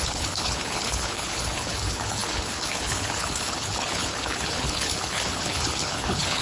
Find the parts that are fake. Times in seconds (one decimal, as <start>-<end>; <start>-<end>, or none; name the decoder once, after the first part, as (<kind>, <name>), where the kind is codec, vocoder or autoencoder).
0.0-6.4 (codec, HILCodec)